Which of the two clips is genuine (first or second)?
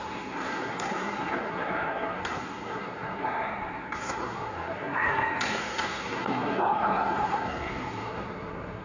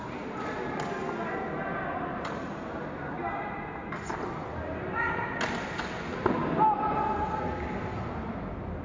second